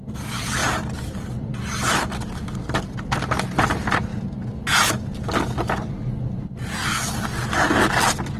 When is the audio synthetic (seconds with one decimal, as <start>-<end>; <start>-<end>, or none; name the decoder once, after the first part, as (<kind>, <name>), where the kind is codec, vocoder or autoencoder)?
none